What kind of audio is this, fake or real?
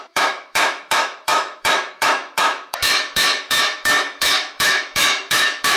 fake